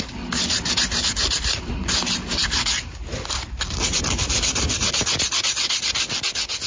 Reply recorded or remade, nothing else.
recorded